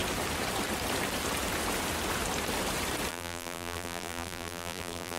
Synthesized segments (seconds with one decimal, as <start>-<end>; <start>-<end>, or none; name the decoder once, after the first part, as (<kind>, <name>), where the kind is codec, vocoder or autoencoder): 3.1-5.2 (vocoder, BigVGAN v2)